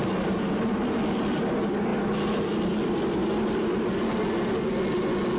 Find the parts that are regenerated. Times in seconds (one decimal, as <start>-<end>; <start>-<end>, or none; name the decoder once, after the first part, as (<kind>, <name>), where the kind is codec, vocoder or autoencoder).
none